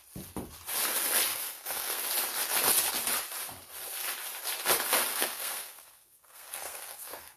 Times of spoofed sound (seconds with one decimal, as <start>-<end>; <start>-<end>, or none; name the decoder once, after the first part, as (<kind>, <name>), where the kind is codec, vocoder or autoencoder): 1.3-2.0 (codec, SNAC); 5.1-7.4